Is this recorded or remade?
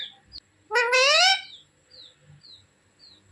recorded